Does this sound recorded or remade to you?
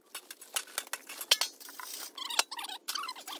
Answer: recorded